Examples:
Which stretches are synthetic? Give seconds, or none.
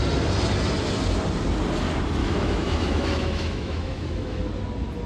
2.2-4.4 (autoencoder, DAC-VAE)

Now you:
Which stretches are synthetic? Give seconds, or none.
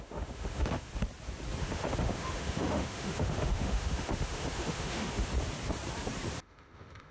0.0-0.9 (autoencoder, DAC-VAE); 1.6-5.3; 6.4-7.1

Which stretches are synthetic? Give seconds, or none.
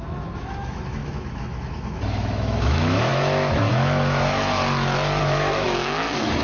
0.0-4.6 (autoencoder, DAC-VAE); 5.2-6.4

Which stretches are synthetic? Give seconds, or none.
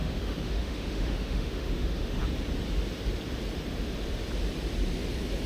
0.0-2.2 (autoencoder, DAC-VAE)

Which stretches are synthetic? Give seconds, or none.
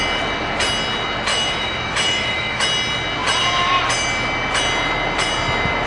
1.3-2.6 (autoencoder, DAC-VAE)